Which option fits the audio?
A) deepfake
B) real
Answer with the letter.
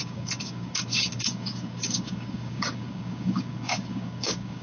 A